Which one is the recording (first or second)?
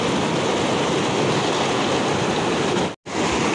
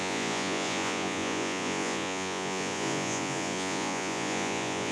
first